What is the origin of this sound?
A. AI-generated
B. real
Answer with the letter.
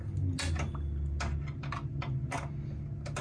B